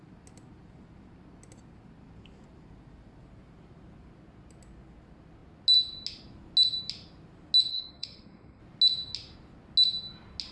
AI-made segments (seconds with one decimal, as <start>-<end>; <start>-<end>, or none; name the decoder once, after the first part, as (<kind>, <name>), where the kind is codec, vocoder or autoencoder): 7.7-8.6 (codec, SNAC)